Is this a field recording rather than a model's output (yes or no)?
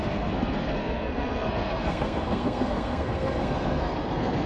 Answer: no